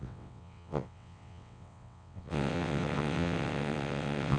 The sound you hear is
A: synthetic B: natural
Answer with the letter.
A